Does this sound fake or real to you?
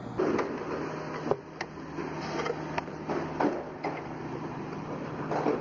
real